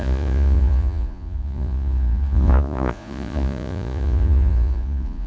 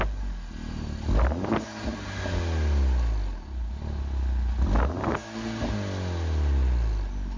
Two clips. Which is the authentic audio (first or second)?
second